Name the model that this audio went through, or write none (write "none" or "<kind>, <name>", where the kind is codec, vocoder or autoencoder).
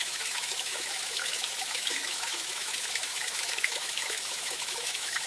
autoencoder, DAC-VAE